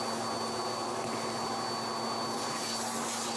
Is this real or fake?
real